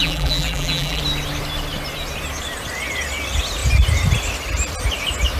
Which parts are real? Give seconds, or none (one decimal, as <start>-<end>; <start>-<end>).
1.0-5.4